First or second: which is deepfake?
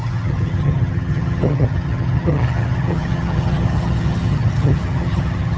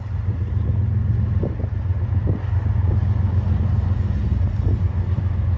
first